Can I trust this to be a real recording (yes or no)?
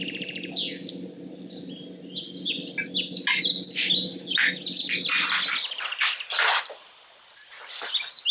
yes